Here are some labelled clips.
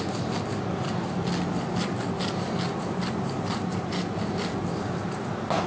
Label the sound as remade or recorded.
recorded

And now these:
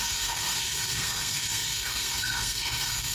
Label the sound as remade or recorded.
remade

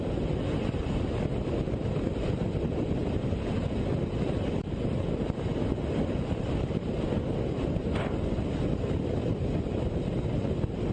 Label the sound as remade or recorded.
recorded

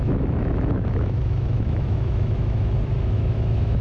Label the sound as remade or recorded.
remade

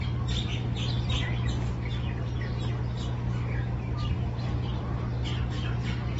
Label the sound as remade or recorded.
recorded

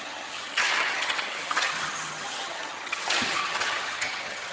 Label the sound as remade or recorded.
remade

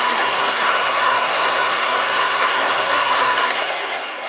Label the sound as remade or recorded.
remade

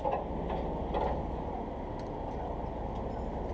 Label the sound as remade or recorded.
recorded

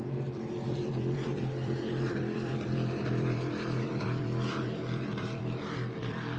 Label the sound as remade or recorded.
remade